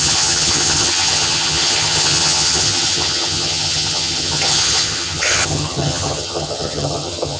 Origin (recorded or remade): remade